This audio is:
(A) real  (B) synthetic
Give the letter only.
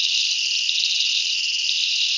A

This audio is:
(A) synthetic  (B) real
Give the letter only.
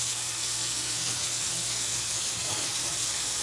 A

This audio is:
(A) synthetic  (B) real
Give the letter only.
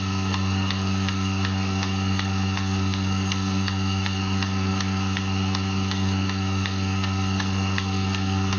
A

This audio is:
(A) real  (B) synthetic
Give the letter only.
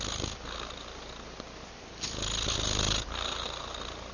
A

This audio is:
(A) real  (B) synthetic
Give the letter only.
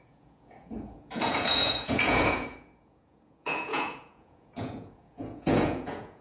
B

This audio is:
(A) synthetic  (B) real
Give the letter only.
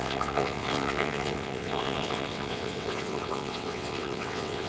A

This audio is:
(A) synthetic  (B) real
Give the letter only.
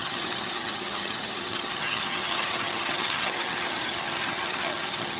A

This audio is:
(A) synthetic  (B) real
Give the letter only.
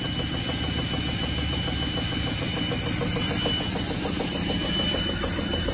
B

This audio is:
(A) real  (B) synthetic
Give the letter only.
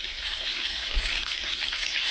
B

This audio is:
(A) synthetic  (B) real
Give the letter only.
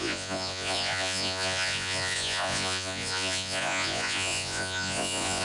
A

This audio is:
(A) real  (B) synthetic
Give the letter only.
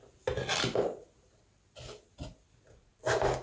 A